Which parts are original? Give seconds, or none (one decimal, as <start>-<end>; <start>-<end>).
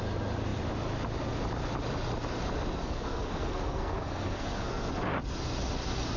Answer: 0.0-2.8; 4.9-6.2